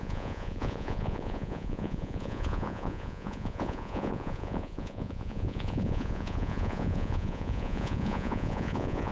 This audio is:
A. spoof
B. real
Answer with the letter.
A